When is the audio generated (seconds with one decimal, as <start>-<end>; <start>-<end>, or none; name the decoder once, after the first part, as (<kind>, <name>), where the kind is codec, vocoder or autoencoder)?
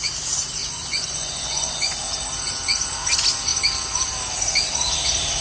0.6-2.0 (vocoder, Vocos)